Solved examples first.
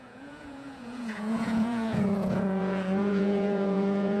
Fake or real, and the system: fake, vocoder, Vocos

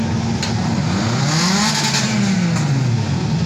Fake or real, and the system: real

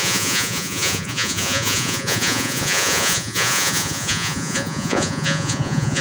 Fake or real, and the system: fake, vocoder, Vocos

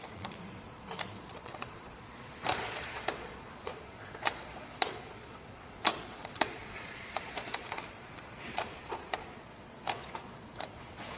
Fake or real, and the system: fake, vocoder, Vocos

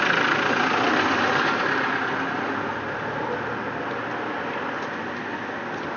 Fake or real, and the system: real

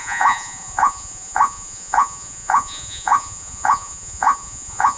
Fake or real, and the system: fake, vocoder, Vocos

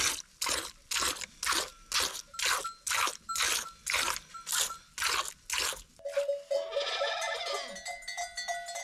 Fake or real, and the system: real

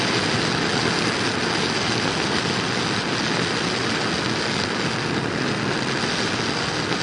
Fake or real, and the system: real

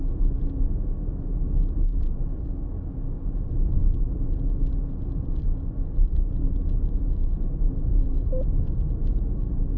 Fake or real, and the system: real